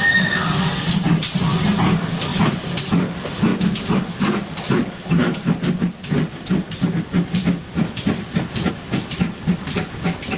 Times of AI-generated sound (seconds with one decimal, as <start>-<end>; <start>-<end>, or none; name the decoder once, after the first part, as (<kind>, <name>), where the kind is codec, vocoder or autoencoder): 2.3-2.8 (vocoder, BigVGAN v2)